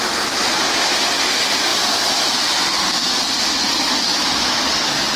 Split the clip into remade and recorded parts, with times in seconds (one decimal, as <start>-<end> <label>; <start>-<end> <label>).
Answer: 0.0-4.1 recorded; 4.1-4.7 remade; 4.7-5.2 recorded